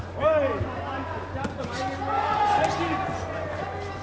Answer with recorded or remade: recorded